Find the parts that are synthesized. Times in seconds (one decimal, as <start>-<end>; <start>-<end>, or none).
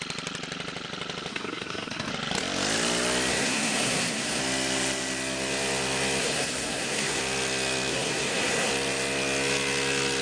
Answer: 1.3-2.1; 3.3-4.4; 6.2-7.2; 7.9-8.7